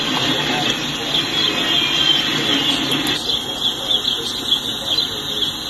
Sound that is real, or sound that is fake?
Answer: real